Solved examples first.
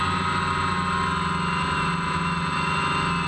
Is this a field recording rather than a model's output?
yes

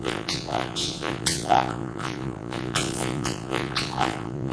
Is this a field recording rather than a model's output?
no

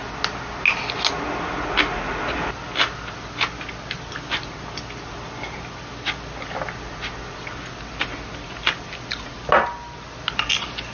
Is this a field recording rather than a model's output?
yes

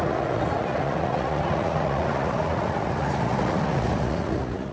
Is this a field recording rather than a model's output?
no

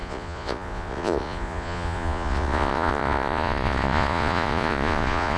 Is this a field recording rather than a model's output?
no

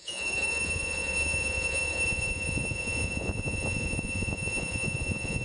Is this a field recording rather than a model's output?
no